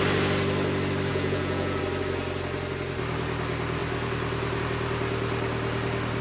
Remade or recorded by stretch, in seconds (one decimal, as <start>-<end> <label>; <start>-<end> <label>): 0.0-1.1 recorded; 1.1-1.8 remade; 1.8-6.2 recorded